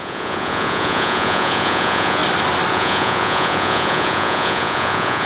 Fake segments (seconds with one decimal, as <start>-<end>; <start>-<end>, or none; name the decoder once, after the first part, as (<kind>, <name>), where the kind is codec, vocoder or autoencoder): 0.0-2.2 (vocoder, Vocos); 2.7-5.3